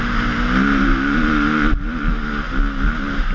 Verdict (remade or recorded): recorded